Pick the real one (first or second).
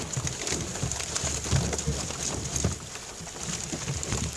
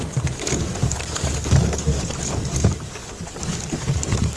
first